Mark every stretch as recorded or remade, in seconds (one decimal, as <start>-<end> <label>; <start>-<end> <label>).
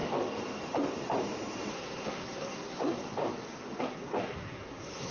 0.0-1.7 recorded; 1.7-3.0 remade; 3.0-3.8 recorded; 3.8-5.1 remade